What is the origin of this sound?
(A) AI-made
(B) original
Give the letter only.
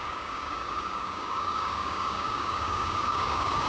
A